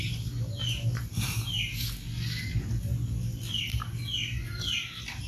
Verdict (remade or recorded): recorded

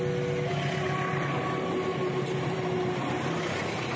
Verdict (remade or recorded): recorded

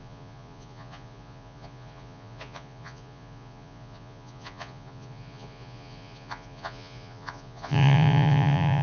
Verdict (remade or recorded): remade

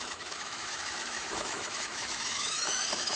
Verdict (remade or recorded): remade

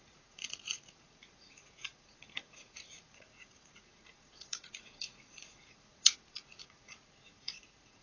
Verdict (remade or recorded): remade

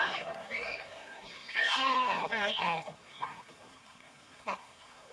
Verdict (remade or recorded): remade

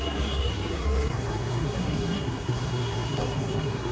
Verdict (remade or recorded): remade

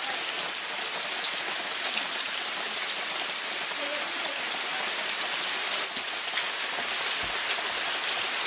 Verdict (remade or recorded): recorded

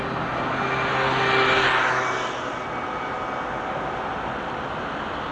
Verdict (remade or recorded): recorded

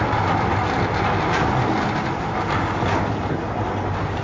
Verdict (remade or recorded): recorded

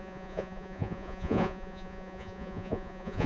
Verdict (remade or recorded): remade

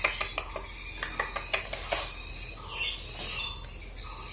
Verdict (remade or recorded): recorded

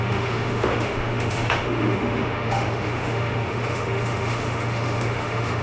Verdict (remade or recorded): remade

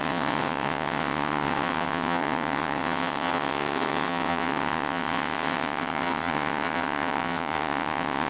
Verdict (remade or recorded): remade